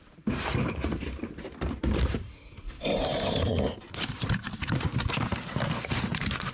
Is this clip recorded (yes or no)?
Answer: no